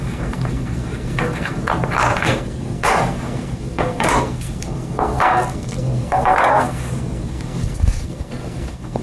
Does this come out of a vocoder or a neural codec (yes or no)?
yes